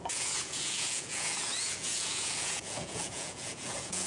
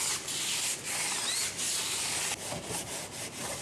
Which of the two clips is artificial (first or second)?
first